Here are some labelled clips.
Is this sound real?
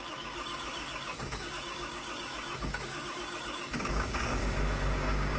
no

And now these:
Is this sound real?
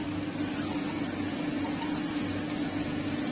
yes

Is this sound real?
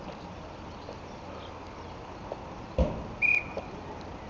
yes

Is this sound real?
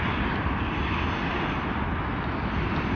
yes